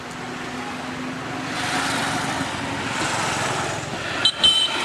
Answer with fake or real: real